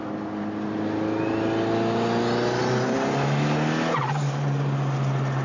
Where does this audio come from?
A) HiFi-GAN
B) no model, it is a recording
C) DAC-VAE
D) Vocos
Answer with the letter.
B